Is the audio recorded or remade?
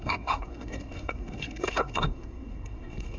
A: remade